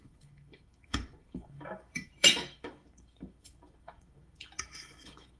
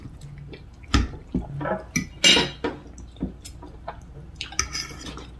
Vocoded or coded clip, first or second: first